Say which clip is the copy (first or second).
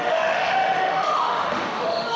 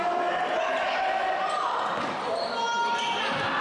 first